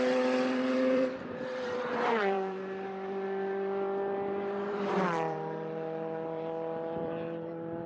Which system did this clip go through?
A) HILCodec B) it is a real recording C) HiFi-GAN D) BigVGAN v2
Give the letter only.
D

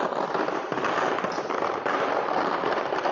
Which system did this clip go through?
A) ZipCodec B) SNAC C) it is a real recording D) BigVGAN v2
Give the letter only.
C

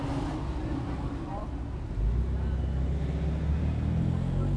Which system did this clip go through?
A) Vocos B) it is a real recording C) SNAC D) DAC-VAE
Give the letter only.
B